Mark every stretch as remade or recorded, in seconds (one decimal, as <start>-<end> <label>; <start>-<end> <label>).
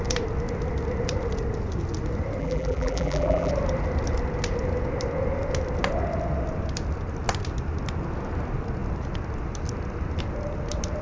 0.0-2.4 recorded; 2.4-3.5 remade; 3.5-11.0 recorded